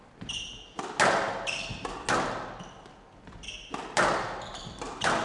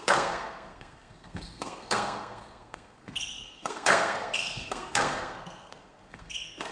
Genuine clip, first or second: first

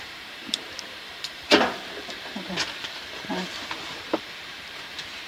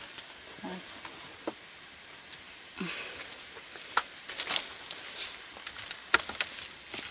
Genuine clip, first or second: second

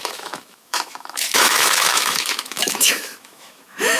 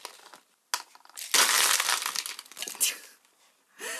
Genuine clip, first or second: second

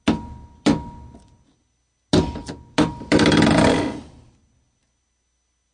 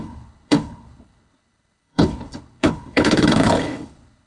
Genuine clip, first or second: first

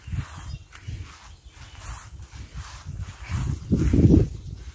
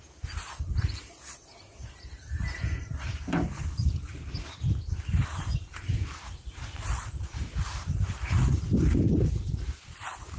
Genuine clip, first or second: first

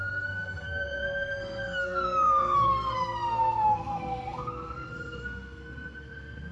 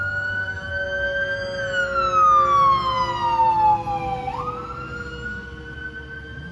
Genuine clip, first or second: second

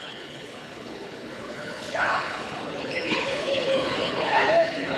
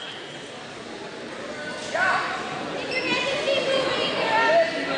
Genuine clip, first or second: second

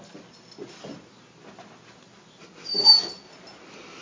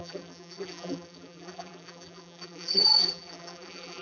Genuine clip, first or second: first